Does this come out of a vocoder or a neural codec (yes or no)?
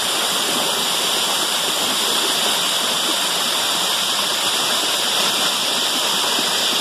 no